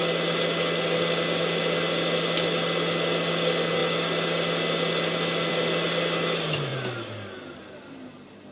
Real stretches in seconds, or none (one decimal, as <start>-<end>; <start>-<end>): 0.0-8.5